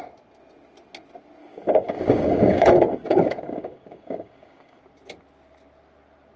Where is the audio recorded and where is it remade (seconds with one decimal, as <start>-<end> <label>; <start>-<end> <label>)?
0.0-1.4 recorded; 1.4-4.8 remade; 4.8-6.4 recorded